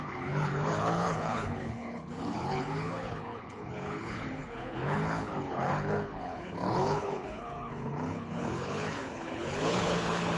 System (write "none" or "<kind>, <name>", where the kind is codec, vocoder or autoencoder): codec, HILCodec